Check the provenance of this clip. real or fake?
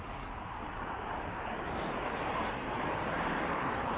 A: fake